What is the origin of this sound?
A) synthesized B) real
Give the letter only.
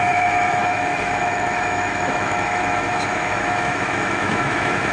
A